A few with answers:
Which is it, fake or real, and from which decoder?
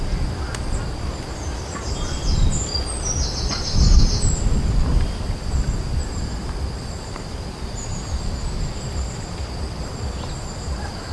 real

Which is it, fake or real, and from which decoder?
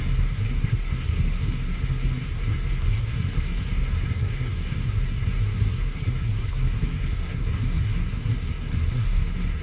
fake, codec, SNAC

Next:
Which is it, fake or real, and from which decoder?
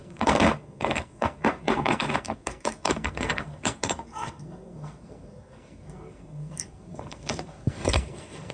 fake, codec, SNAC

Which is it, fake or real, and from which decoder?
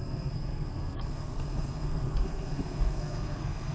fake, codec, SNAC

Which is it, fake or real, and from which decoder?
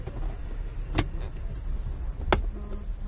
real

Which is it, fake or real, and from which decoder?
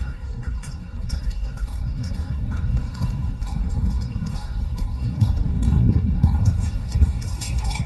fake, codec, SNAC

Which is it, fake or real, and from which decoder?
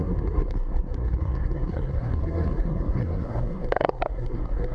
fake, codec, SNAC